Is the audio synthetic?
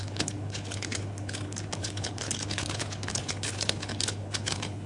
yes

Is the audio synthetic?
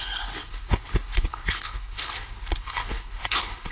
yes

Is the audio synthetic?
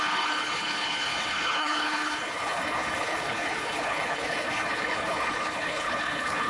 yes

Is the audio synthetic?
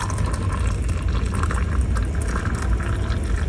no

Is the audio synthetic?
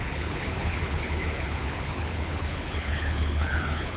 yes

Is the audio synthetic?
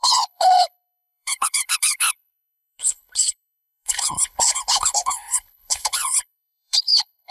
yes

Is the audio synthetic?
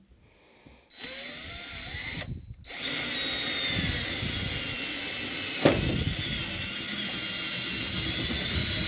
no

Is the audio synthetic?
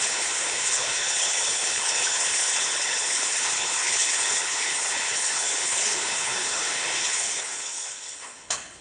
yes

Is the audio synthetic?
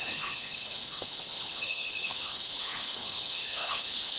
yes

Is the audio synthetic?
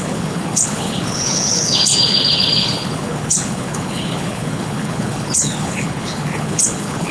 yes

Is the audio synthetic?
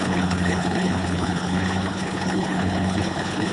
yes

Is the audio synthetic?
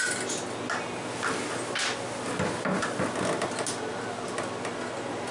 no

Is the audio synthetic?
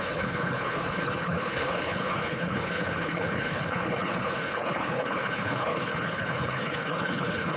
yes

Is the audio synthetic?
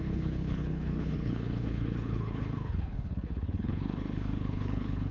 yes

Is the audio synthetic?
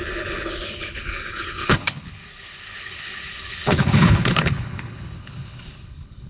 yes